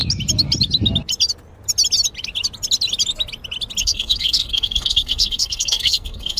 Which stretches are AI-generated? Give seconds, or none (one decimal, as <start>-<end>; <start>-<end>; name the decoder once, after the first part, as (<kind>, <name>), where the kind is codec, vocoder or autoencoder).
3.8-6.4 (codec, SNAC)